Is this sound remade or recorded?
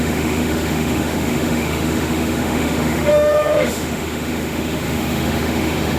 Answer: remade